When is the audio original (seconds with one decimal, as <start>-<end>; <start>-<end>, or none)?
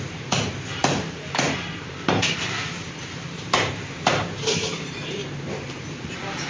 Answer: 5.2-6.1